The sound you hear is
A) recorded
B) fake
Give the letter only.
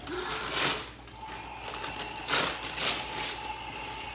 A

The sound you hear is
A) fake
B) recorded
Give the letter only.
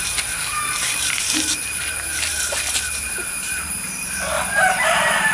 A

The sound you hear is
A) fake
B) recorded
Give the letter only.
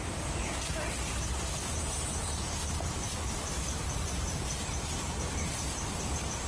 A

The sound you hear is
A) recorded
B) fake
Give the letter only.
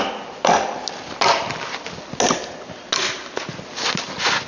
A